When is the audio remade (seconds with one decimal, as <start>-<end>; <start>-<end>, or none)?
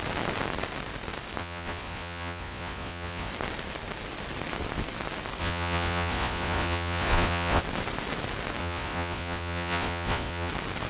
1.4-3.3; 5.4-7.6; 8.6-10.5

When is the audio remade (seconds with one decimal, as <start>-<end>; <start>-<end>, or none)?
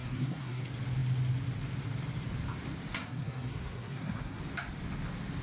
0.0-0.6; 2.9-4.4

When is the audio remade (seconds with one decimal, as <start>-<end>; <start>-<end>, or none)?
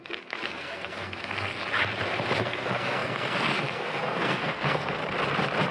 0.0-1.6; 2.4-5.0